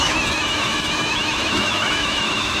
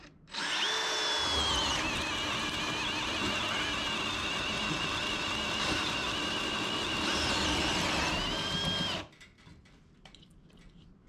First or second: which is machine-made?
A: first